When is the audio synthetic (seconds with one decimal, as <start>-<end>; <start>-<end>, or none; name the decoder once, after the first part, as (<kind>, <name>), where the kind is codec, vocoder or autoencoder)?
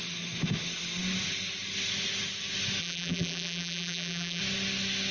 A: 2.8-4.4 (vocoder, BigVGAN v2)